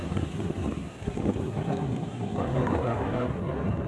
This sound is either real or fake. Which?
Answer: fake